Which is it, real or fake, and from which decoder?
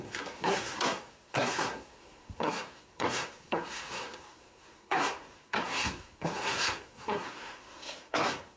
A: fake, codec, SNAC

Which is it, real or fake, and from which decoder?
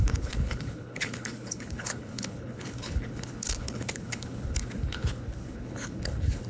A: fake, codec, HILCodec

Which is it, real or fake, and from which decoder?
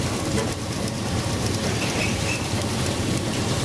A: fake, vocoder, BigVGAN v2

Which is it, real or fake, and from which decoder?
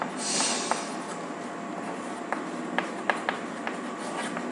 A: real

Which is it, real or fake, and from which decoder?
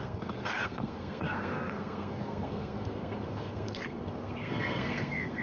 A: fake, codec, SNAC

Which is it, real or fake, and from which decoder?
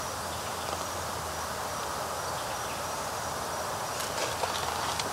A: real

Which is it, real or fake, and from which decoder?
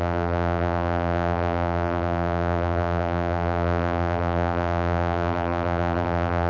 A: fake, vocoder, BigVGAN v2